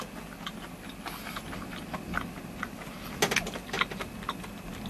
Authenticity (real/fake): real